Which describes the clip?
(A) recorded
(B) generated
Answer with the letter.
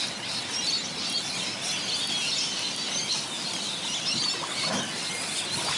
A